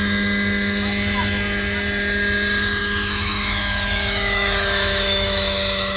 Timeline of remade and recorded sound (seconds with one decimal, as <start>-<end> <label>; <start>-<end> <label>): 0.0-2.8 recorded; 2.8-6.0 remade